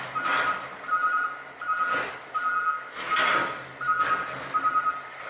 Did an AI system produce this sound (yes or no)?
no